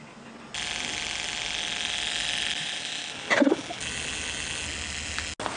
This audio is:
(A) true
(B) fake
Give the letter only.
A